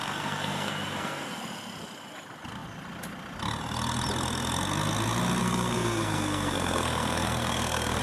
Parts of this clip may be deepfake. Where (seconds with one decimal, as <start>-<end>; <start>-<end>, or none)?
0.0-1.4; 5.4-8.0